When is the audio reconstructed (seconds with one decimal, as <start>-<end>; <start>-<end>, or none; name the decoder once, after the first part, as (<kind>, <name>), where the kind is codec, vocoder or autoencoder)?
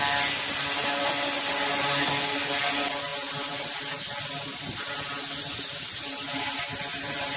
none